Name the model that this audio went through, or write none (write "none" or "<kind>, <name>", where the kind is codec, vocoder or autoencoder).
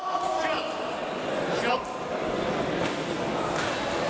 none